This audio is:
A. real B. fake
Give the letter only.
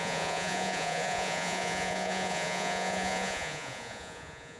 B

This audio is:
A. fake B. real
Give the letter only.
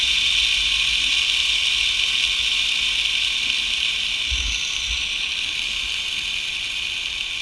B